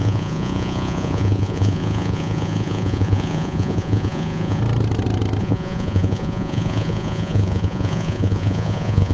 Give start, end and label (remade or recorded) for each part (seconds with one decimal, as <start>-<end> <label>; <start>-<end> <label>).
0.0-4.6 remade; 4.6-5.4 recorded; 5.4-9.1 remade